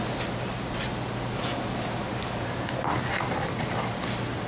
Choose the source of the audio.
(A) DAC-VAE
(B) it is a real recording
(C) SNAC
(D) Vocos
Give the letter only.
B